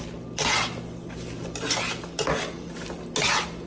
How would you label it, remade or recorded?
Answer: recorded